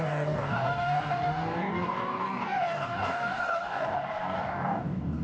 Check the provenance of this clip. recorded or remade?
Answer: remade